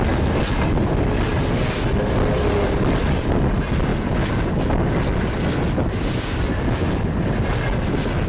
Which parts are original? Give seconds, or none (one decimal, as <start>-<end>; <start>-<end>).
0.0-8.3